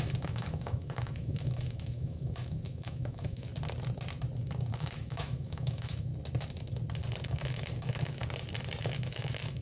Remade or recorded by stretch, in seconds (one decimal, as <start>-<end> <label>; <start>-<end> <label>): 0.0-3.5 remade; 3.5-4.7 recorded; 4.7-6.1 remade; 6.1-7.2 recorded; 7.2-8.2 remade; 8.2-8.8 recorded; 8.8-9.6 remade